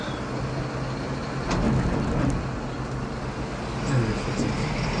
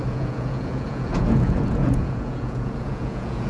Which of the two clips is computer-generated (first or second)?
second